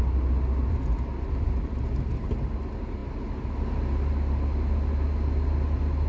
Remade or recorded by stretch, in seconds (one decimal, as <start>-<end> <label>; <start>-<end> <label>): 0.0-6.1 recorded